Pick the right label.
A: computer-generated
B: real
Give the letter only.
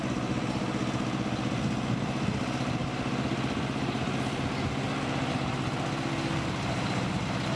B